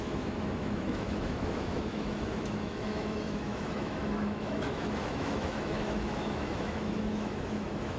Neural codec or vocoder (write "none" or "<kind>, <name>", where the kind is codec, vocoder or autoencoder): autoencoder, DAC-VAE